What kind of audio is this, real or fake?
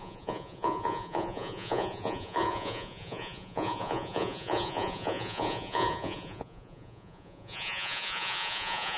fake